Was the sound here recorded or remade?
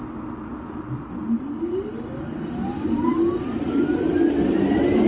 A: recorded